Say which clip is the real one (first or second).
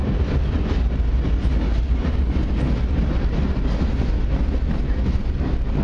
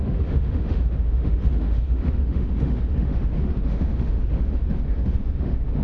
first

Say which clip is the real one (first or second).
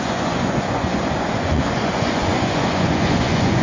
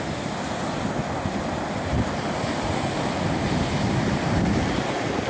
second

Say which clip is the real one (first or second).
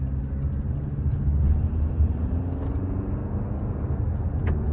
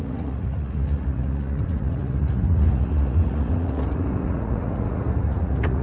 first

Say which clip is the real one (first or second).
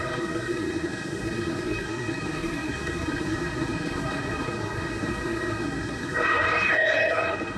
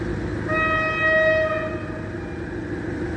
second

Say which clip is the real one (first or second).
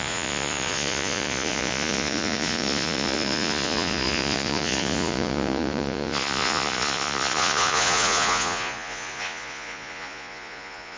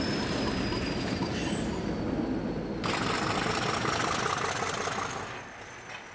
second